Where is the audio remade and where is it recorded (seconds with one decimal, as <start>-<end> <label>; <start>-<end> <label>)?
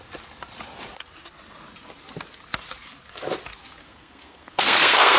0.0-3.8 recorded; 3.8-5.2 remade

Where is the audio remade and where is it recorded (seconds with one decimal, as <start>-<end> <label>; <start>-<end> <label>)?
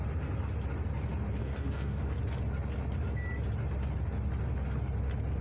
0.0-1.4 recorded; 1.4-2.0 remade; 2.0-5.4 recorded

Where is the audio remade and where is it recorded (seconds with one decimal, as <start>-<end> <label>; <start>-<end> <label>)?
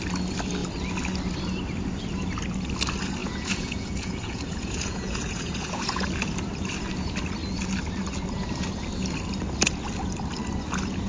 0.0-3.2 recorded; 3.2-6.0 remade; 6.0-11.1 recorded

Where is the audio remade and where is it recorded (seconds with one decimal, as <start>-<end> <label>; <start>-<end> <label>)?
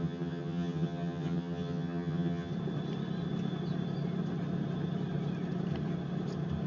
0.0-2.5 remade; 2.5-6.7 recorded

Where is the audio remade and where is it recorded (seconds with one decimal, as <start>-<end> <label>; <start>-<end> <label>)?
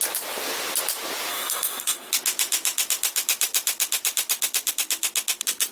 0.0-1.3 recorded; 1.3-2.1 remade; 2.1-5.7 recorded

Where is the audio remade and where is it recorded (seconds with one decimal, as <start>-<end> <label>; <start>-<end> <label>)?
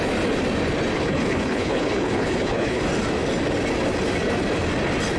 0.0-1.0 recorded; 1.0-2.8 remade; 2.8-5.2 recorded